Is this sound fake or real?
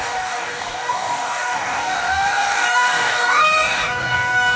fake